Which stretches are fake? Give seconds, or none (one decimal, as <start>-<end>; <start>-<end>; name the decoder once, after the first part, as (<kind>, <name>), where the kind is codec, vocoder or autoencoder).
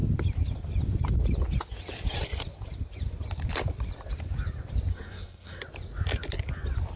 4.9-5.6 (codec, SNAC)